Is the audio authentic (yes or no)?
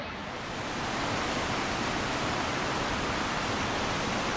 yes